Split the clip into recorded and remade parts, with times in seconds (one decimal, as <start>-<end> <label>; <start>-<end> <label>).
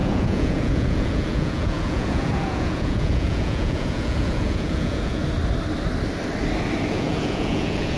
0.0-5.2 remade; 5.2-6.9 recorded; 6.9-8.0 remade